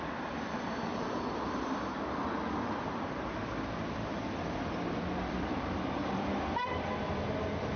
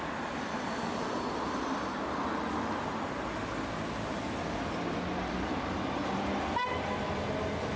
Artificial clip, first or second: first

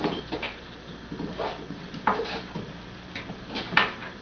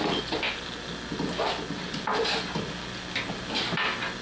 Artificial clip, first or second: first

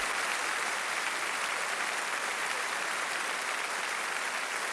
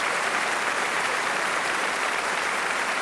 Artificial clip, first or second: second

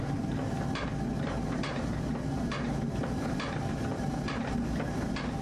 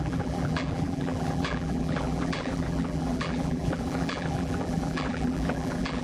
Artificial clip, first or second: second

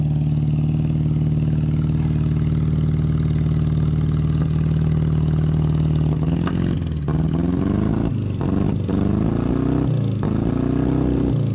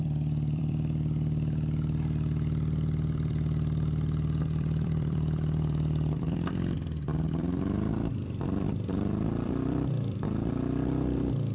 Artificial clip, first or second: second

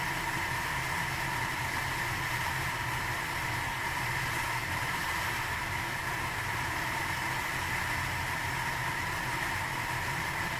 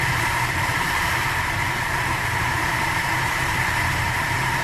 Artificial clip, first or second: second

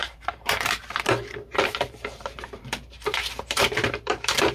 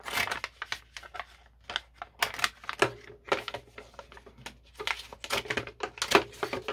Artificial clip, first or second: first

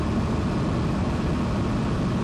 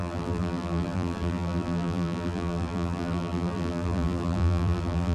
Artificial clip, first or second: second